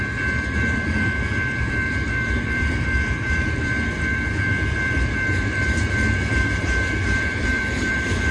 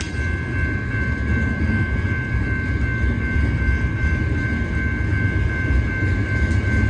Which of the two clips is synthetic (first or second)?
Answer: first